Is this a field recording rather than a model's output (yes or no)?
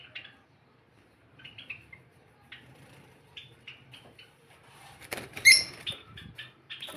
no